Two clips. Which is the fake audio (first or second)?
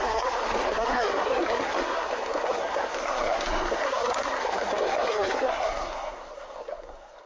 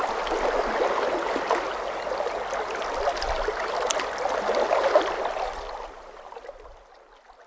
first